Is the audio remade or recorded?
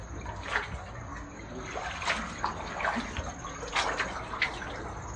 recorded